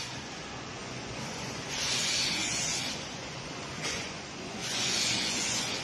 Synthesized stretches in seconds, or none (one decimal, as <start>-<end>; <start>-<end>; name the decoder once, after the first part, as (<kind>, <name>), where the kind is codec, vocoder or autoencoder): 0.0-5.8 (vocoder, Vocos)

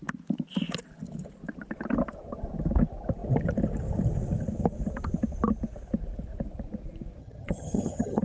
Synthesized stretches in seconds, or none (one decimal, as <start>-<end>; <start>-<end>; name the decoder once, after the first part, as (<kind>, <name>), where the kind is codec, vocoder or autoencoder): 7.2-8.2 (vocoder, HiFi-GAN)